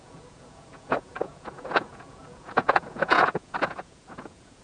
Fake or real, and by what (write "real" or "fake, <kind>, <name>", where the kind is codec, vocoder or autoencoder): fake, vocoder, Vocos